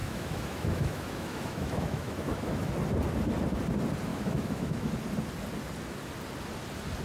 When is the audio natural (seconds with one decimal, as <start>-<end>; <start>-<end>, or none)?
2.7-4.1; 4.9-7.0